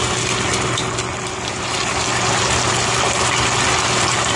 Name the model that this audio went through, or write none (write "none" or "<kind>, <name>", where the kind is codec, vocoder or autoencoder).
none